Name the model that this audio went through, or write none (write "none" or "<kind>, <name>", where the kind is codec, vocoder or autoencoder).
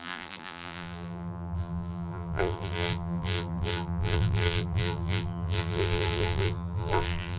vocoder, BigVGAN v2